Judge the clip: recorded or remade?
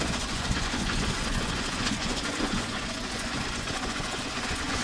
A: remade